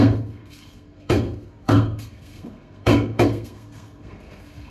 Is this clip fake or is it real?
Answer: fake